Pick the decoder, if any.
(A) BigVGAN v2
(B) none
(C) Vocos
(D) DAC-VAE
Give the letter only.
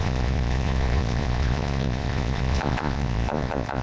C